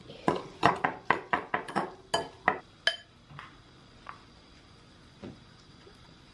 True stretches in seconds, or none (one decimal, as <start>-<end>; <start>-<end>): 1.8-3.7